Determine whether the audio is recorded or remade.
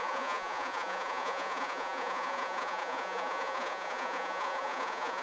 remade